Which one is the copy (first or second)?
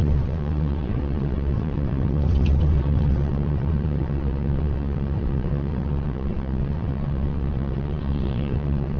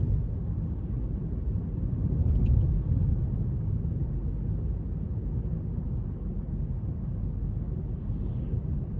first